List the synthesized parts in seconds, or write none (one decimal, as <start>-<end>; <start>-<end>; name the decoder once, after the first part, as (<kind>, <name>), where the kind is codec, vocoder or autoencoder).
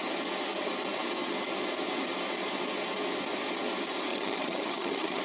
4.1-5.2 (vocoder, HiFi-GAN)